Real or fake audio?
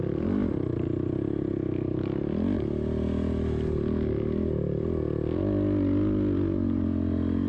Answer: real